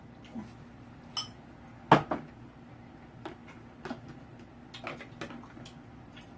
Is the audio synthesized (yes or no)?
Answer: no